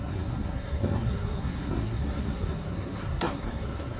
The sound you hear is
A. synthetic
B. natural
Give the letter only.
A